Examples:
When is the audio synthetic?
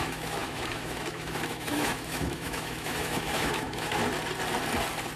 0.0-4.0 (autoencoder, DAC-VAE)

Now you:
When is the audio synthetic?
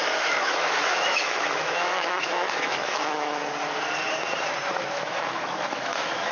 0.0-3.4 (autoencoder, DAC-VAE); 4.7-6.3